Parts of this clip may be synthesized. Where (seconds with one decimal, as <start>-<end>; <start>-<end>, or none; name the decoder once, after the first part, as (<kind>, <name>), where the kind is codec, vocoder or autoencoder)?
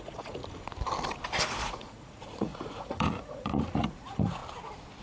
0.0-0.4 (vocoder, Vocos); 1.6-4.4